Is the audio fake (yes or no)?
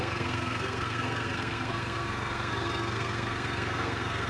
yes